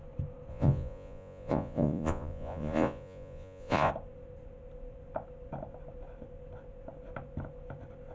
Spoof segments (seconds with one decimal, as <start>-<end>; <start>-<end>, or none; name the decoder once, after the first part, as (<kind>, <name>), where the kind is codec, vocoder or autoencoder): 0.5-3.9 (vocoder, Vocos)